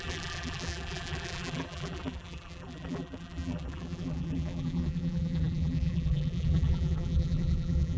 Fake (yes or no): yes